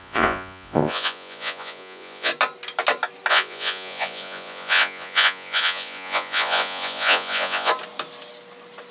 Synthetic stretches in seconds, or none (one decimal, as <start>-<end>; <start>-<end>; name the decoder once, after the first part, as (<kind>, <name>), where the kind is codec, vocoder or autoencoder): 0.0-2.3 (vocoder, Vocos); 3.3-7.7